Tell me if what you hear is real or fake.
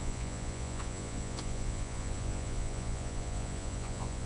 fake